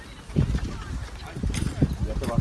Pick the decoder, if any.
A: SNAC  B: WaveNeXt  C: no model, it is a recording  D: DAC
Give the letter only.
C